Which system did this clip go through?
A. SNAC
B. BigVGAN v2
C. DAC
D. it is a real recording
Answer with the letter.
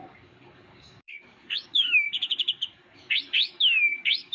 C